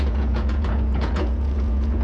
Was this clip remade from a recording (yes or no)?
yes